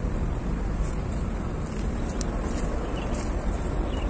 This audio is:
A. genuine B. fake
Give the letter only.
A